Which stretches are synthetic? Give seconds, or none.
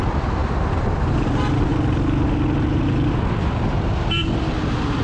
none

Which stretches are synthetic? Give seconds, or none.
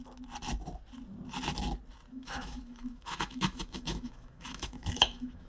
2.1-5.5 (autoencoder, DAC-VAE)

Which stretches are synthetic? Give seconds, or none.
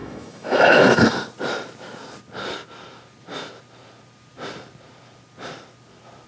0.0-1.1 (autoencoder, DAC-VAE)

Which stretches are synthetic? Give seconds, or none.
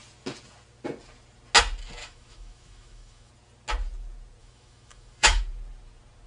2.0-3.3 (autoencoder, DAC-VAE); 4.4-5.4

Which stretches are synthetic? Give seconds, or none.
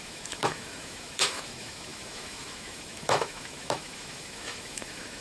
0.0-5.2 (autoencoder, DAC-VAE)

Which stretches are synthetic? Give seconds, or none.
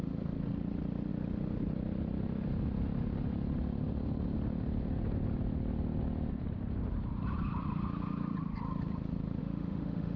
9.4-10.2 (autoencoder, DAC-VAE)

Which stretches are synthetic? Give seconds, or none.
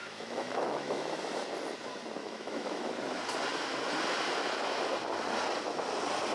0.0-1.2 (autoencoder, DAC-VAE); 2.2-2.9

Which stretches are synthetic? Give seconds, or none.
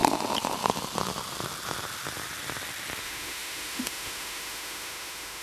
3.0-5.4 (autoencoder, DAC-VAE)